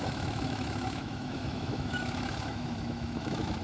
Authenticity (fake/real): fake